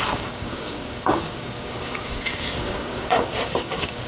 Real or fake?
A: fake